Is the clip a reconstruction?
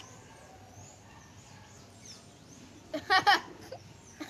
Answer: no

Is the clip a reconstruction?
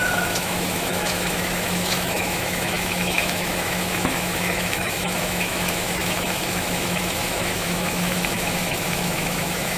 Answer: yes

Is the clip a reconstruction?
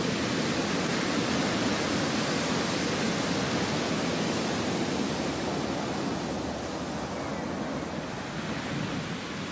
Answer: no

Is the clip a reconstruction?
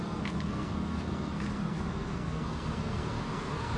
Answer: yes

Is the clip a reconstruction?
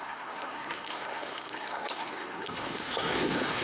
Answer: yes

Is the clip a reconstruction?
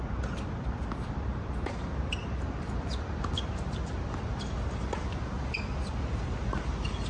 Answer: no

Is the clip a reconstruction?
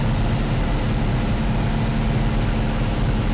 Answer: no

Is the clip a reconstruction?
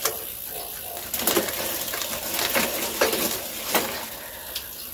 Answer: no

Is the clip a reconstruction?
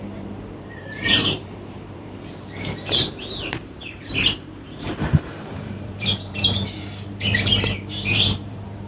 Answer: yes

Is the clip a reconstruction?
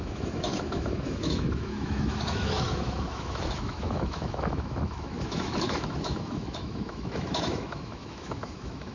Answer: yes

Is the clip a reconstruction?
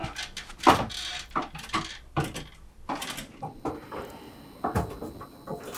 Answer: no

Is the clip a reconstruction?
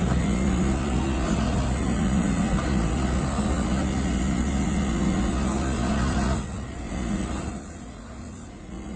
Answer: yes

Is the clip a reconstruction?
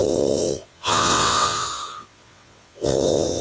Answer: yes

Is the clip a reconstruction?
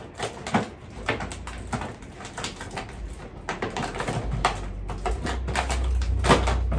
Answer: no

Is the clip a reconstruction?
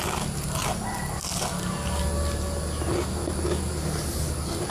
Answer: no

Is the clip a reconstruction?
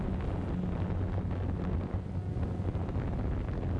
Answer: no